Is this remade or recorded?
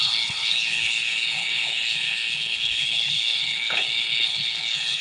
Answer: remade